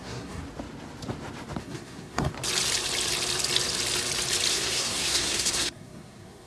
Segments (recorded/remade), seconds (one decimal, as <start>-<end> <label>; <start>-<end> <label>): 0.0-0.4 remade; 0.4-1.6 recorded; 1.6-2.3 remade; 2.3-4.5 recorded; 4.5-6.5 remade